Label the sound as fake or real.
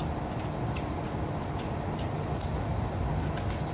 fake